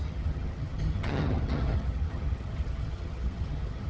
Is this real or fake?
fake